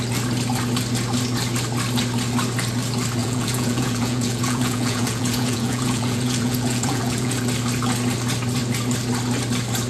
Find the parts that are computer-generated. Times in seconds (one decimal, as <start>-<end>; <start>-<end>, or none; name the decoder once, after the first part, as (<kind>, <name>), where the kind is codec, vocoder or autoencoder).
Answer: 3.2-7.4 (vocoder, Vocos)